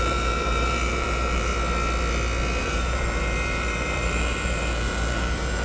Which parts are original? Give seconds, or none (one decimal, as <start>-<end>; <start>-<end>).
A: 1.5-2.6